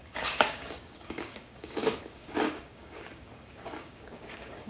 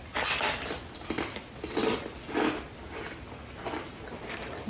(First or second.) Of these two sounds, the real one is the second